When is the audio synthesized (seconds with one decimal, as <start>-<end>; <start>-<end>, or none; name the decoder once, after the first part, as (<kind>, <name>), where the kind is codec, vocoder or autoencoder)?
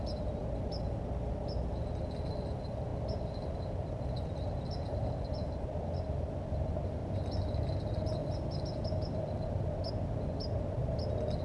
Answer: 7.0-7.6 (vocoder, BigVGAN v2)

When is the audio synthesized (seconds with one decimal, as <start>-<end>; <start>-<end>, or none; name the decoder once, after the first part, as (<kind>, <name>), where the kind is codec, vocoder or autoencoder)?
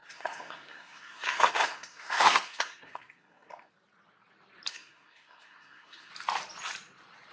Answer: 0.0-3.7 (codec, SNAC); 4.7-6.1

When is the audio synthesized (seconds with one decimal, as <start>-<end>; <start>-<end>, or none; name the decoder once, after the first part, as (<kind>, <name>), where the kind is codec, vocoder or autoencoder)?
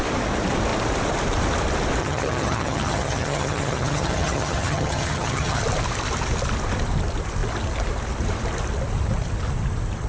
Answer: 2.0-5.6 (vocoder, HiFi-GAN)